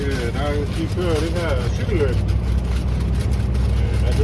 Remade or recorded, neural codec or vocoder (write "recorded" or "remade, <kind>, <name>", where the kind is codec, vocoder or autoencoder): recorded